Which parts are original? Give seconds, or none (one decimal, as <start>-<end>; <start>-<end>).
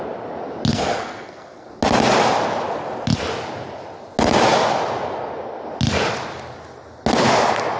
0.0-0.7; 1.7-7.8